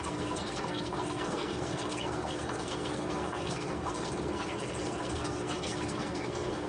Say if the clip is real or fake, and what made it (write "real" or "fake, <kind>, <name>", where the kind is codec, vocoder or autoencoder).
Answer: fake, codec, SNAC